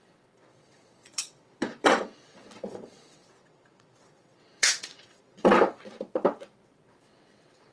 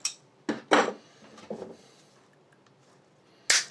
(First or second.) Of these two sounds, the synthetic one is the first